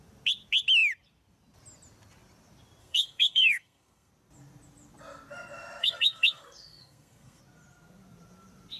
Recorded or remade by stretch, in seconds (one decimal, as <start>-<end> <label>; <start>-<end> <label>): 0.0-2.8 recorded; 2.8-4.1 remade; 4.1-5.8 recorded; 5.8-7.4 remade; 7.4-8.8 recorded